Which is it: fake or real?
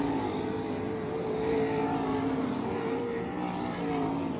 real